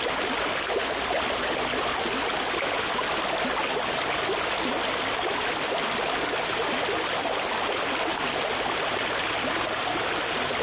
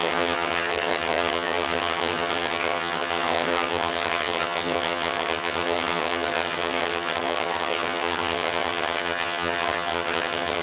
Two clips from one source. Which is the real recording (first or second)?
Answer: first